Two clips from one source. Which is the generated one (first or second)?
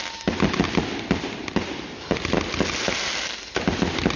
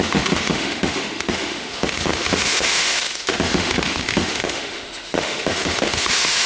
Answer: second